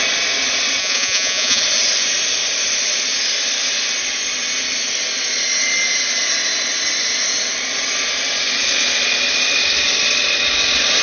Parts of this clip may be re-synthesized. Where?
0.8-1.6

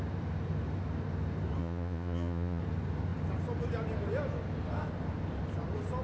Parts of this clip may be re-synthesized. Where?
1.6-2.6